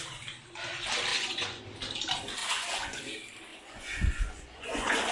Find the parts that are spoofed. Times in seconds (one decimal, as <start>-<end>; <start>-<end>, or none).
1.1-1.6; 2.4-3.0; 3.5-5.1